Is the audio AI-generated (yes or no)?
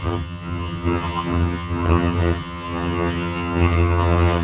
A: yes